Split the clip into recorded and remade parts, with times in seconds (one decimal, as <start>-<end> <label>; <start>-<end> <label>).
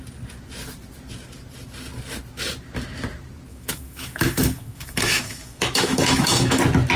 0.0-3.5 recorded; 3.5-6.6 remade; 6.6-7.0 recorded